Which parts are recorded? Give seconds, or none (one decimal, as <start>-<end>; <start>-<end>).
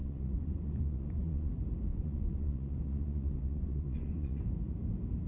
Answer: 1.5-1.9; 4.4-5.3